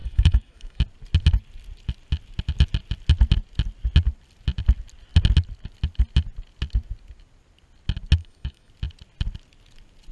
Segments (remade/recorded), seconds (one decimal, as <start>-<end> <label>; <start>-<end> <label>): 0.0-0.8 remade; 0.8-8.2 recorded; 8.2-8.7 remade; 8.7-10.1 recorded